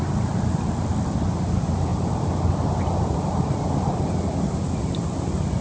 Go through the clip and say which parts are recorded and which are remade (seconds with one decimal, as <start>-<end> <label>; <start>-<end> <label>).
0.0-5.6 recorded

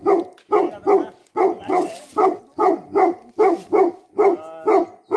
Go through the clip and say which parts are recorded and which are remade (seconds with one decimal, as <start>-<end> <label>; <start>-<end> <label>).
0.0-1.2 recorded; 1.2-2.4 remade; 2.4-5.2 recorded